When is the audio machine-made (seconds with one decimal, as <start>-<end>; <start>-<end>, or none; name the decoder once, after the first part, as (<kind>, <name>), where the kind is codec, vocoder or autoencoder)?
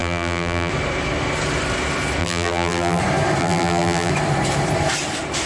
0.0-0.7 (vocoder, BigVGAN v2); 2.2-3.0; 3.4-4.1